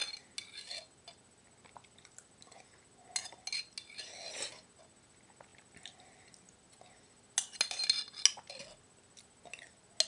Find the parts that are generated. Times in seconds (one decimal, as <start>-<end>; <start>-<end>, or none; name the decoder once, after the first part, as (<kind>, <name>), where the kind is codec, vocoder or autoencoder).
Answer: none